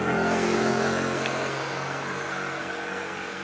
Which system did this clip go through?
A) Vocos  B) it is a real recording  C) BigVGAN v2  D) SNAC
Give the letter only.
D